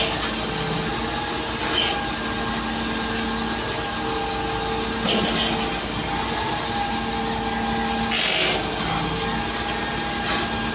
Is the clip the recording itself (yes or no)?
yes